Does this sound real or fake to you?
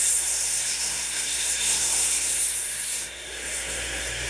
fake